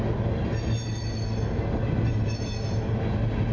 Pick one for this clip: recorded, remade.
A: recorded